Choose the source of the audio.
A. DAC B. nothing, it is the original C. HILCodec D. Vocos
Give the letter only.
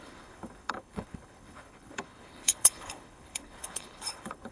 C